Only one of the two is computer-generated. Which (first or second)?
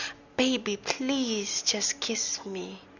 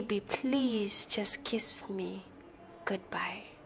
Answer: second